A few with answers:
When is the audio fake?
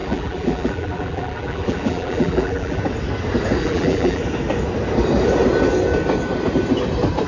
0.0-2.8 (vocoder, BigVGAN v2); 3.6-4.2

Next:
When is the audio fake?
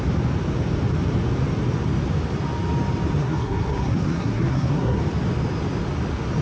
3.2-5.0 (codec, SNAC)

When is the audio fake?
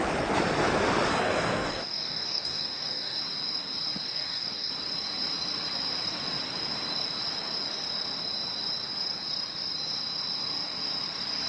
1.1-3.2 (codec, DAC); 4.1-4.7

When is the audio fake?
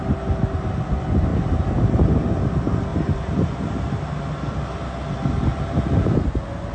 1.3-2.4 (vocoder, BigVGAN v2); 2.9-4.2; 5.5-6.2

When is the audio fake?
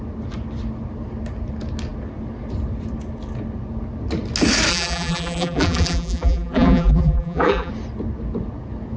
4.7-7.7 (vocoder, BigVGAN v2)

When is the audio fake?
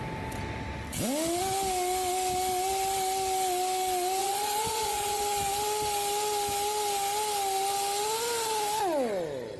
4.2-5.2 (vocoder, Vocos)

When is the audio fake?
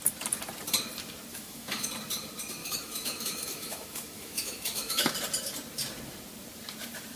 1.3-1.9 (autoencoder, DAC-VAE); 2.6-5.1